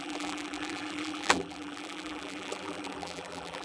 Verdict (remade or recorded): remade